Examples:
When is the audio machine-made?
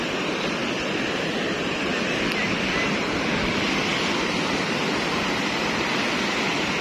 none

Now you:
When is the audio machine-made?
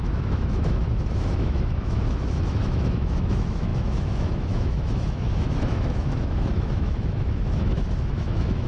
0.0-8.7